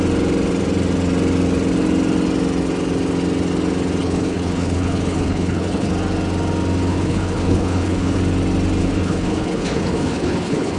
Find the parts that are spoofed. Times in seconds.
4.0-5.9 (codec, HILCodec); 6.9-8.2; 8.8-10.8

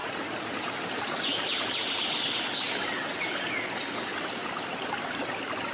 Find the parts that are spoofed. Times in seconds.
none

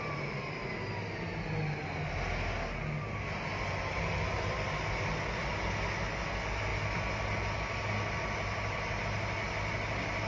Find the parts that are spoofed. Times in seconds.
none

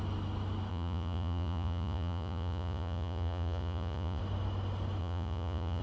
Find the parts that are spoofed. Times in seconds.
0.7-4.2 (vocoder, Vocos); 5.0-5.8

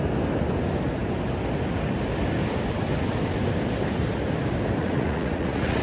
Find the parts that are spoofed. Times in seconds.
4.8-5.8 (vocoder, Vocos)

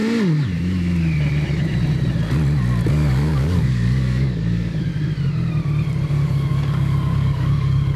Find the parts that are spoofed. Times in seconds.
2.9-4.9 (codec, DAC); 6.1-8.0

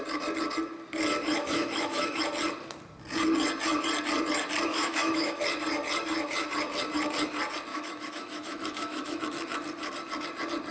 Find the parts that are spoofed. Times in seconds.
1.4-2.2 (autoencoder, DAC-VAE); 4.7-5.4; 7.7-9.2